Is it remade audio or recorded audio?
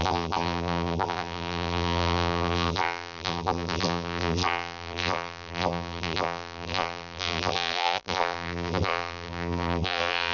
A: remade